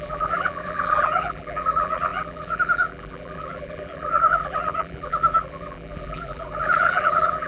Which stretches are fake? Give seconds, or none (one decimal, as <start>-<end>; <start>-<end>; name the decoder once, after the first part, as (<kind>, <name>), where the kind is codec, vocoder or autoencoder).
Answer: 0.0-7.5 (vocoder, BigVGAN v2)